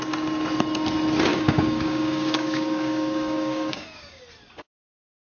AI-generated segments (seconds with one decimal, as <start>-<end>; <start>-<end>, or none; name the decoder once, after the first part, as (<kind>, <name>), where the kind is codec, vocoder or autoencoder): 1.3-4.2 (codec, DAC)